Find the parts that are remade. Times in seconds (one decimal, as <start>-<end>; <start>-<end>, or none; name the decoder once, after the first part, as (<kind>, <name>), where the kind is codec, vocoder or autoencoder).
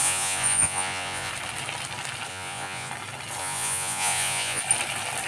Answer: 0.0-1.3 (vocoder, Vocos); 2.3-2.9; 3.4-4.6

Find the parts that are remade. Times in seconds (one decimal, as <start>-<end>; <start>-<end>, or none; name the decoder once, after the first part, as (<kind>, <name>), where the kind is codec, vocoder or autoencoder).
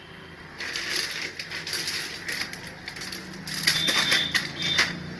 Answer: none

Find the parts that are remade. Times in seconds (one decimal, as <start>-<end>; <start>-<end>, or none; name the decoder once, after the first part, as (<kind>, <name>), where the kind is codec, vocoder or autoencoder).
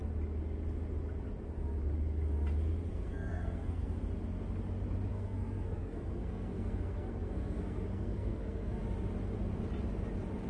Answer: 2.9-4.0 (codec, SNAC); 5.1-8.8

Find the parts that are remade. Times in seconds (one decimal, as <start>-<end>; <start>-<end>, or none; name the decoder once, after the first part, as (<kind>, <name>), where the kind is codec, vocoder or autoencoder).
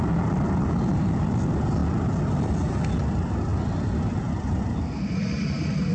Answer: none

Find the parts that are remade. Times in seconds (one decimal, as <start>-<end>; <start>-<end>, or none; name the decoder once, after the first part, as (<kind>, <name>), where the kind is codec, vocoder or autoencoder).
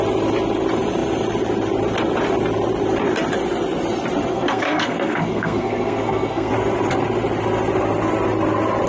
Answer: 4.3-6.5 (codec, SNAC)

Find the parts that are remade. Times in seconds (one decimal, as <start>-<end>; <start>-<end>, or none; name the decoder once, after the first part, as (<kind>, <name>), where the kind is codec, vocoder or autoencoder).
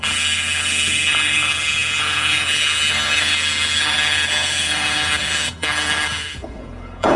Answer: 0.0-7.2 (codec, HILCodec)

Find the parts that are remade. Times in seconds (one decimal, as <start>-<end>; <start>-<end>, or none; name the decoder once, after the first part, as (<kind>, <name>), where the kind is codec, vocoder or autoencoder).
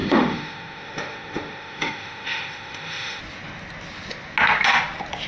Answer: 0.0-3.2 (autoencoder, DAC-VAE)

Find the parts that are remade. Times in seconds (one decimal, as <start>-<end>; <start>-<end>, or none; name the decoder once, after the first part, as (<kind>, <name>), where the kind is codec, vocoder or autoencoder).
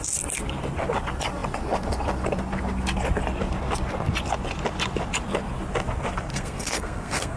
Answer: 6.3-7.4 (codec, SNAC)